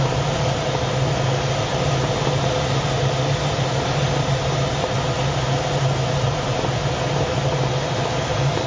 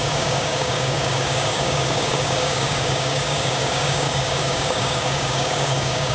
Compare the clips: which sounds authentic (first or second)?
first